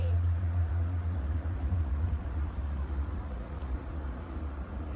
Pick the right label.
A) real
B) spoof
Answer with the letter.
B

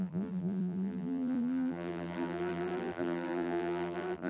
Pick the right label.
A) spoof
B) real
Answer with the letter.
A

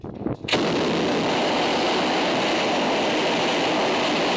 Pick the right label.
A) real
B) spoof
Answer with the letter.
A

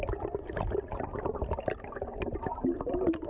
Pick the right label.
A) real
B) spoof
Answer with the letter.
A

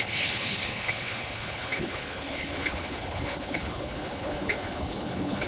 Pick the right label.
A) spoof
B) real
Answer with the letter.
A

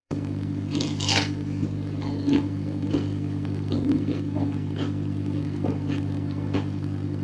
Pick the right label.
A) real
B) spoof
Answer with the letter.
B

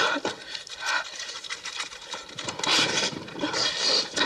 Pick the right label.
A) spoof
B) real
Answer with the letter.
A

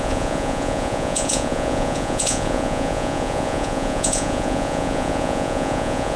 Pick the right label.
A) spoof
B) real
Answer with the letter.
A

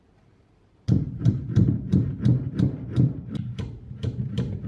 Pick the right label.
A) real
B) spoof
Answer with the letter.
B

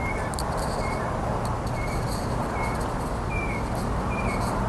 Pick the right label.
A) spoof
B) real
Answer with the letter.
B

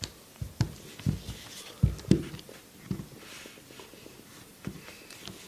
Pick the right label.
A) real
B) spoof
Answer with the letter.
A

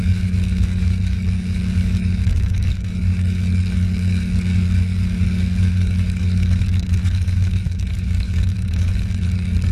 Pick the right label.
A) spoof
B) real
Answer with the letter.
A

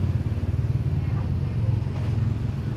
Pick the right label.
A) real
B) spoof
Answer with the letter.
A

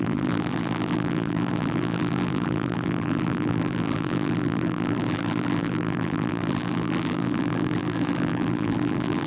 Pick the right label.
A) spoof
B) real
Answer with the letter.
A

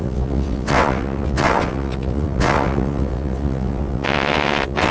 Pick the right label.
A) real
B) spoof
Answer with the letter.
B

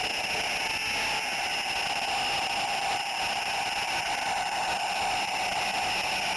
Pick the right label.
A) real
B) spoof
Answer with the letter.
A